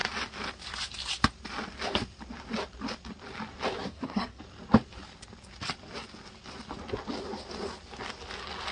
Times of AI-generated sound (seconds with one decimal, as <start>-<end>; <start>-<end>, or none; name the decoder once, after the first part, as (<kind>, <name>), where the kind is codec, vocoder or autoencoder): 3.8-4.4 (codec, SNAC)